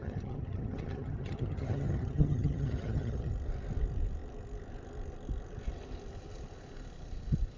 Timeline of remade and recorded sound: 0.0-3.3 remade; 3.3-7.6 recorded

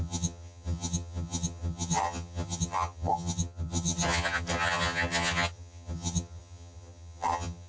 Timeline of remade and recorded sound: 0.0-7.7 remade

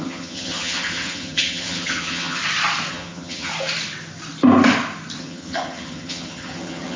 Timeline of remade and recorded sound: 0.0-2.4 remade; 2.4-2.9 recorded; 2.9-3.5 remade; 3.5-5.2 recorded; 5.2-7.0 remade